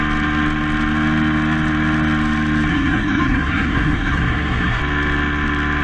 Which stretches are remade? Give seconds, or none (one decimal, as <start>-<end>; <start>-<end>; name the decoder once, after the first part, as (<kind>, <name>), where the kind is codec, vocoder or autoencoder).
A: 2.7-4.8 (codec, SNAC)